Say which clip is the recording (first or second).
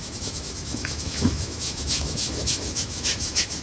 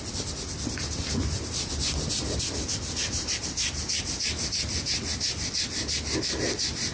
second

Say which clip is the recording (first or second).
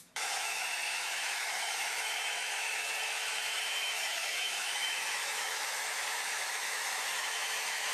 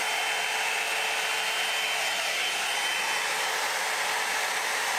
second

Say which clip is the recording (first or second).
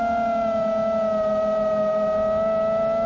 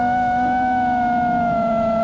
first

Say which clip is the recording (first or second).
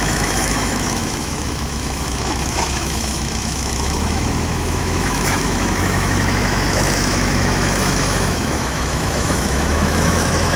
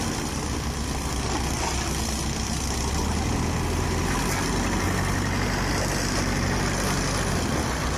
second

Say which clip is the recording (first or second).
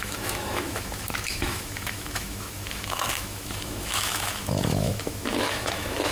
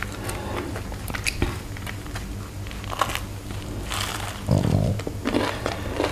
second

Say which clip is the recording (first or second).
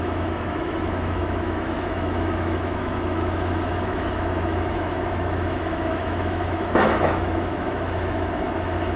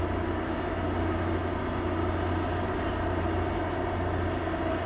second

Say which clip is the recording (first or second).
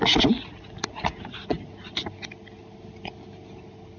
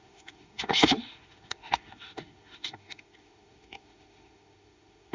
first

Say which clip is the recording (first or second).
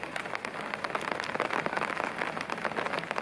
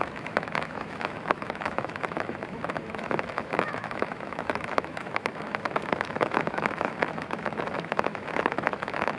first